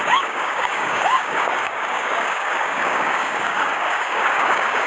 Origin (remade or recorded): remade